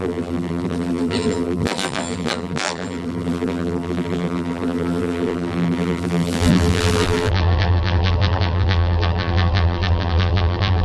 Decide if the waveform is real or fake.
fake